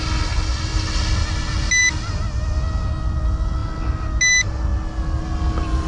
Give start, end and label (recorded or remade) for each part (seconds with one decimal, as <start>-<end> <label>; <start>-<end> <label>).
0.0-5.9 recorded